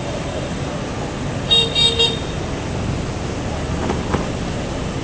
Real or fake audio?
real